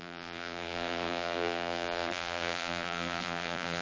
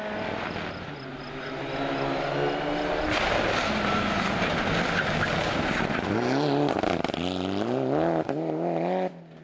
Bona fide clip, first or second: second